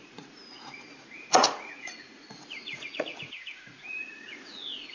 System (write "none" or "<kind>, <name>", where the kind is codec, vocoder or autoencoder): vocoder, Vocos